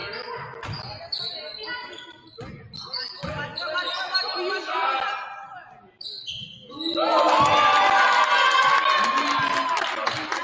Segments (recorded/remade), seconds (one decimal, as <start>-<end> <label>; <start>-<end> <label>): 0.0-10.4 recorded